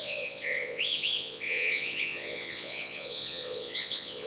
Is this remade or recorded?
remade